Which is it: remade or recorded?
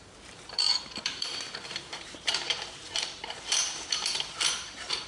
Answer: remade